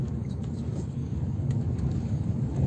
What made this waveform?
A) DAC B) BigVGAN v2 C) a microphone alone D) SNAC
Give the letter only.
A